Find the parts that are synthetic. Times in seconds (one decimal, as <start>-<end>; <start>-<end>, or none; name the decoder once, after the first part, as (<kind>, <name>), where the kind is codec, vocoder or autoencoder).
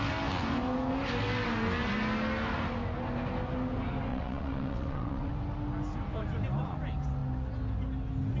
4.1-5.3 (vocoder, WaveNeXt)